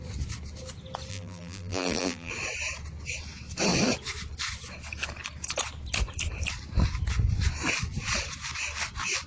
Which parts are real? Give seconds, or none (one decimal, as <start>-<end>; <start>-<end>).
0.0-1.1; 2.3-9.3